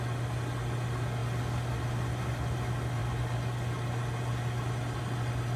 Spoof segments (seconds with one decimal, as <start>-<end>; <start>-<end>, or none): none